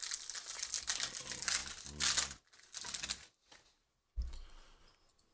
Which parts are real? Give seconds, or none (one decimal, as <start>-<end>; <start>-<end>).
0.0-5.3